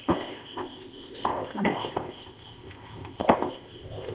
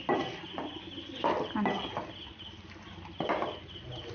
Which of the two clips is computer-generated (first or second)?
first